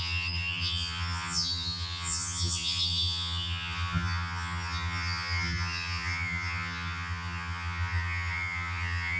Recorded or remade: remade